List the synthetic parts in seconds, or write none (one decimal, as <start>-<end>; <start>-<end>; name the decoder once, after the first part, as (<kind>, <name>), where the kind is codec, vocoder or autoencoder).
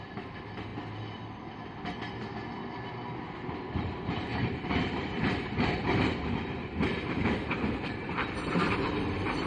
4.3-9.5 (vocoder, BigVGAN v2)